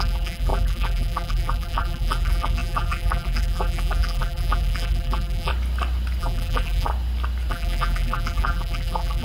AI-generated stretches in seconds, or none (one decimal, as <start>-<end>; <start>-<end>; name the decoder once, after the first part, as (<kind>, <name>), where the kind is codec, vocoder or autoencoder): 0.0-5.5 (vocoder, BigVGAN v2); 6.2-6.9; 7.5-9.2